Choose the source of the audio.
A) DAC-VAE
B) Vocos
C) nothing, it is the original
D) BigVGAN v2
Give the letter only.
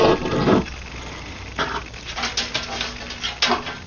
C